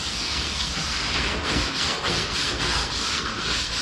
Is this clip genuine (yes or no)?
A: no